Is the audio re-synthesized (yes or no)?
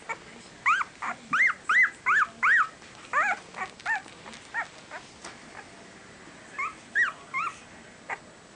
no